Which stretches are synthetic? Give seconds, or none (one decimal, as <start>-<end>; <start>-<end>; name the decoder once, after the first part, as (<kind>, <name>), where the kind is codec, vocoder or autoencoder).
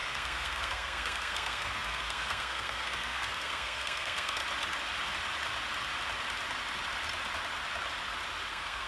0.0-4.4 (codec, SNAC); 8.5-8.9